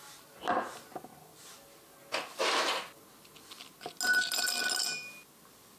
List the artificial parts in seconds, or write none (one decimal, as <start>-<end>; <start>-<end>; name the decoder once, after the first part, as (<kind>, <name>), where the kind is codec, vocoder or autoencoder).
none